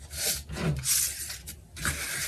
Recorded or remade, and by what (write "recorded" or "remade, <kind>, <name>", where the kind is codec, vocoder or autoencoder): recorded